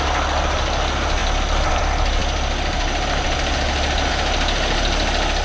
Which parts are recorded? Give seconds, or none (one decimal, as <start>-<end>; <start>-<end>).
0.0-5.4